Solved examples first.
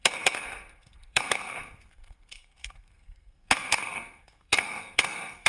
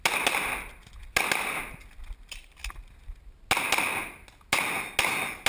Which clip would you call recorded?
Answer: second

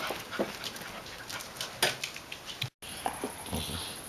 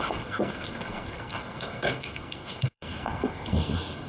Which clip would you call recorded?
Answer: first